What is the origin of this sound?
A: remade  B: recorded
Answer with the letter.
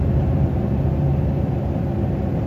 B